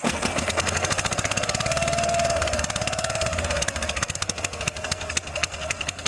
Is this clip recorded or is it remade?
remade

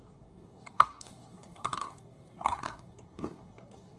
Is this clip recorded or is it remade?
remade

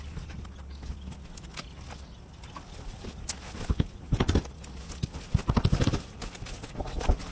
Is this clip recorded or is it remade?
recorded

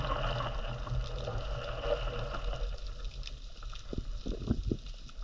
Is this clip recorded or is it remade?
recorded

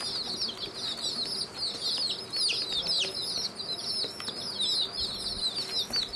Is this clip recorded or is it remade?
recorded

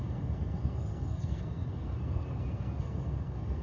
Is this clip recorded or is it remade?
remade